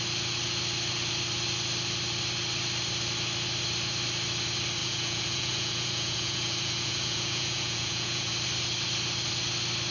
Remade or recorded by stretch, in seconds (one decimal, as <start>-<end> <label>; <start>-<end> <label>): 0.0-4.8 recorded; 4.8-8.3 remade; 8.3-9.9 recorded